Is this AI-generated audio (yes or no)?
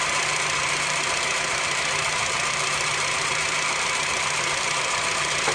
yes